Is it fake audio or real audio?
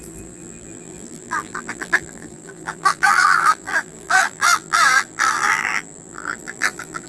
fake